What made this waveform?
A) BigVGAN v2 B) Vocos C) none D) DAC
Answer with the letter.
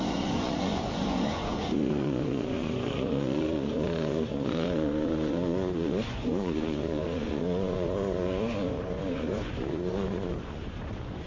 B